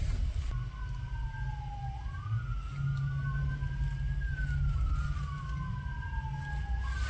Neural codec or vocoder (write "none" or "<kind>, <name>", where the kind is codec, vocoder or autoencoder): none